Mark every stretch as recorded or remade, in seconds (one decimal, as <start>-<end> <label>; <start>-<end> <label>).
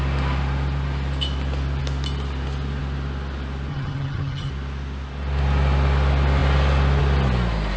0.0-3.7 recorded; 3.7-4.5 remade; 4.5-7.8 recorded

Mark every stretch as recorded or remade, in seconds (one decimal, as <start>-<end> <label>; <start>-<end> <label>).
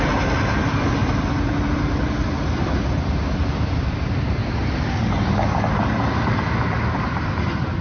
0.0-7.8 recorded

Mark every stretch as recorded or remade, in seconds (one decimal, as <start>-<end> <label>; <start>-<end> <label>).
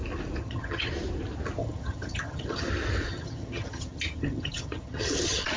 0.0-0.4 recorded; 0.4-0.9 remade; 0.9-1.6 recorded; 1.6-2.7 remade; 2.7-3.1 recorded; 3.1-5.6 remade